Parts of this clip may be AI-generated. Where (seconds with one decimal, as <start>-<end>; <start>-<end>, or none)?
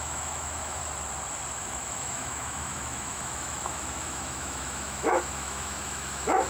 0.0-0.8; 1.6-6.5